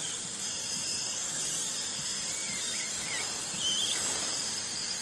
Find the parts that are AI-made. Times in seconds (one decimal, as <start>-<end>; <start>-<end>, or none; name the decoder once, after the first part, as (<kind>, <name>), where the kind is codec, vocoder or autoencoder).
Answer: 0.0-1.2 (vocoder, BigVGAN v2); 2.0-2.7; 3.6-5.0